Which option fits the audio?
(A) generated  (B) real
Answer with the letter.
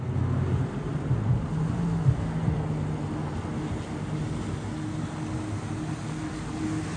B